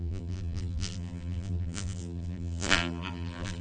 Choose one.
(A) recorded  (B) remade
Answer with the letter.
B